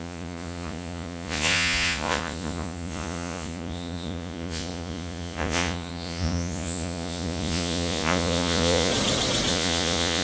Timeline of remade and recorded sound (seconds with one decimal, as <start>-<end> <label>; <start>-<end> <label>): 0.0-8.9 remade; 8.9-9.5 recorded; 9.5-10.2 remade